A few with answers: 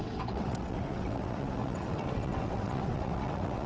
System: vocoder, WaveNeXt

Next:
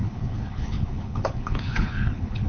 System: codec, HILCodec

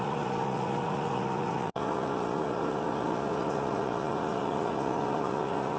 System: vocoder, Vocos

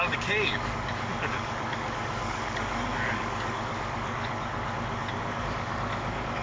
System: codec, DAC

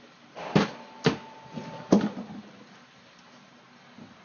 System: none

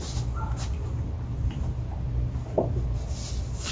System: none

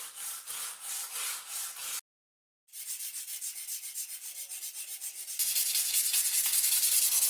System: none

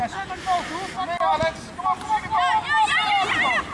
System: none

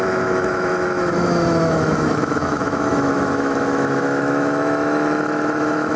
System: autoencoder, DAC-VAE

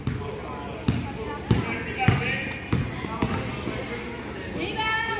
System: none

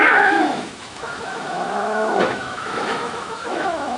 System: autoencoder, DAC-VAE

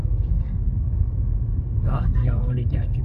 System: codec, SNAC